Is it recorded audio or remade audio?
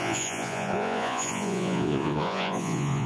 remade